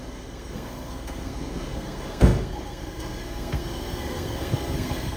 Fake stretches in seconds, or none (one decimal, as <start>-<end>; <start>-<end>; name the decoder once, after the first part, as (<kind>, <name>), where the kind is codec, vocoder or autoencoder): 0.0-5.2 (codec, SNAC)